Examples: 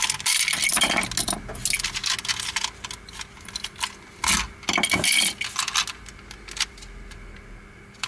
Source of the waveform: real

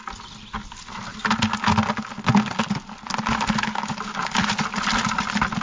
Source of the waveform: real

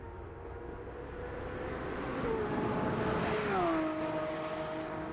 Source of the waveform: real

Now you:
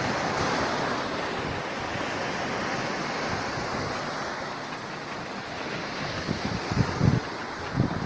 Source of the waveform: real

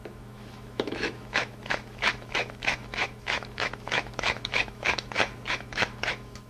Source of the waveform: fake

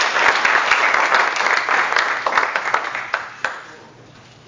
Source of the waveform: real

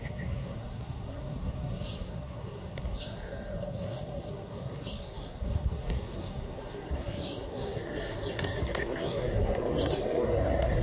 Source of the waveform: fake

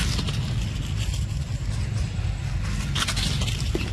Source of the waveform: real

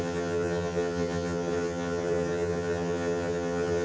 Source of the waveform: fake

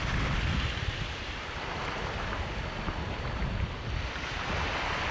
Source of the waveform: real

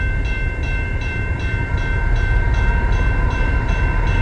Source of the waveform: fake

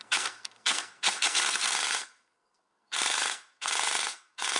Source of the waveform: fake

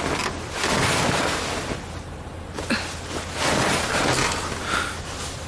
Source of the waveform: real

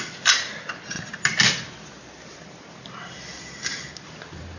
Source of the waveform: real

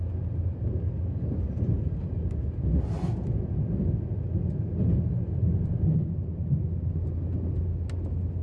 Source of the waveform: real